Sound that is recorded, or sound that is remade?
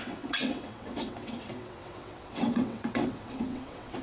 remade